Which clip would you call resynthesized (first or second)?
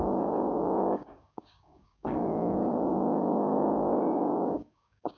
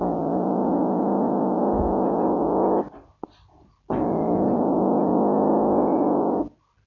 first